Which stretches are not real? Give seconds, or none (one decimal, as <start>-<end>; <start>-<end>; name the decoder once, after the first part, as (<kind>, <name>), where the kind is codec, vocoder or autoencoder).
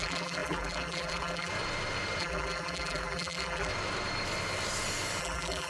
0.0-1.5 (vocoder, BigVGAN v2); 2.2-3.7; 5.2-5.7